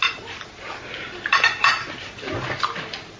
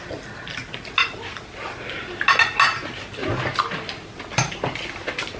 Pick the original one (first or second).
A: second